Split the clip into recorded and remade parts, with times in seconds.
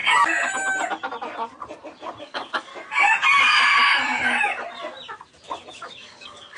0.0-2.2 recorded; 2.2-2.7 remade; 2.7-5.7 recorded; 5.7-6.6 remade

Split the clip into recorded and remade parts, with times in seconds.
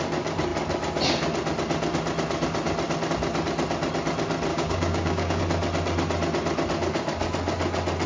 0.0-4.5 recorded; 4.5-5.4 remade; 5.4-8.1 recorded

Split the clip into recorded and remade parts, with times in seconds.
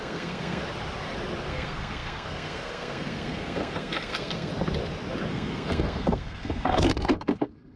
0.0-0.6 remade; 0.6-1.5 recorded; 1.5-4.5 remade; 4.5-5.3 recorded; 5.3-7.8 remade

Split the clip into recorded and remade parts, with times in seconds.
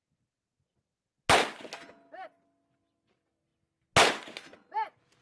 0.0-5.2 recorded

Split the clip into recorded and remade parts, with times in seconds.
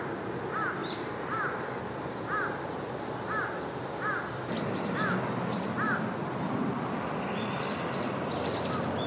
0.0-9.1 recorded